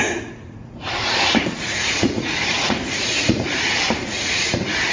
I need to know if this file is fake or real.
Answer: fake